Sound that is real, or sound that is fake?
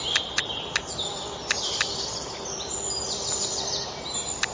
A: real